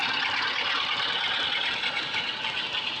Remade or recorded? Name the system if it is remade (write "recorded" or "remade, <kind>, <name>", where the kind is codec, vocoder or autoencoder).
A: recorded